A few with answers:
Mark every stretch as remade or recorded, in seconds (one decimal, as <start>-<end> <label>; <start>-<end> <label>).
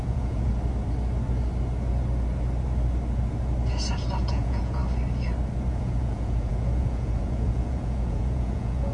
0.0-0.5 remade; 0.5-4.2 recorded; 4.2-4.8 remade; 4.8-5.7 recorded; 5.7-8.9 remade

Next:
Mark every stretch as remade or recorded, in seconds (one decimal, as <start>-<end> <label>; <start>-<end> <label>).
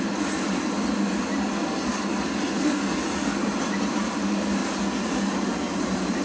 0.0-6.2 recorded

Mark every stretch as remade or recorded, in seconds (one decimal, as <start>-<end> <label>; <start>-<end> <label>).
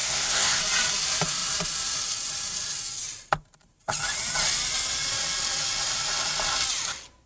0.0-0.6 remade; 0.6-7.3 recorded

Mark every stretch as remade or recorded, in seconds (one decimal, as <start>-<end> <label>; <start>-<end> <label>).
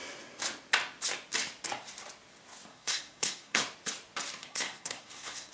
0.0-2.7 recorded; 2.7-3.6 remade; 3.6-4.4 recorded; 4.4-5.5 remade